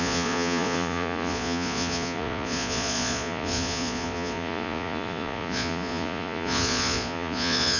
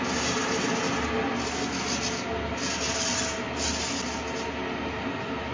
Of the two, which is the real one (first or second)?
second